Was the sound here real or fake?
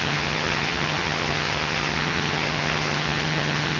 fake